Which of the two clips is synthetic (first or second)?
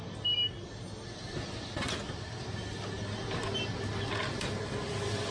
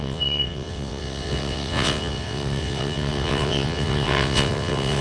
second